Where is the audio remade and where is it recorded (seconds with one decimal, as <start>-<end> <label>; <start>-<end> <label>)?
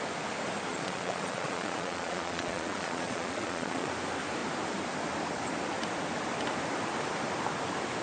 0.0-0.7 recorded; 0.7-3.9 remade; 3.9-8.0 recorded